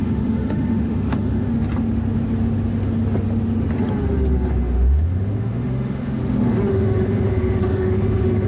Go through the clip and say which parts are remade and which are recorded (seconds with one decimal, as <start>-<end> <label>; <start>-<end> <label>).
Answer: 0.0-1.5 remade; 1.5-4.5 recorded; 4.5-6.2 remade; 6.2-6.7 recorded; 6.7-8.5 remade